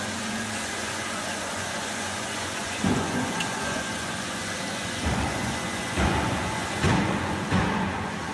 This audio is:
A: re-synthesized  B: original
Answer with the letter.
A